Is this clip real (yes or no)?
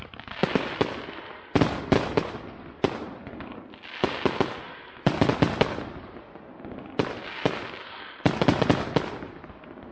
yes